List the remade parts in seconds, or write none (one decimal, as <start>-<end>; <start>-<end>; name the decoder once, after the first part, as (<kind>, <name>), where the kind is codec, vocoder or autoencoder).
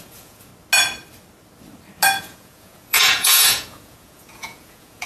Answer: 0.0-0.5 (vocoder, Vocos); 2.2-5.1